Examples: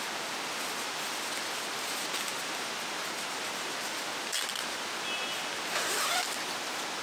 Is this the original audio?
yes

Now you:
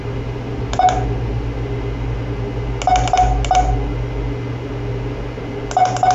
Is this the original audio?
yes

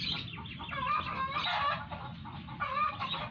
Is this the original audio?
yes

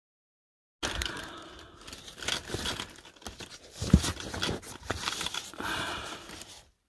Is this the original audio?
yes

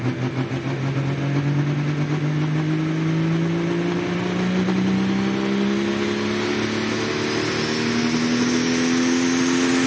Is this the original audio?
yes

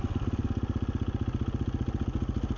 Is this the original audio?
yes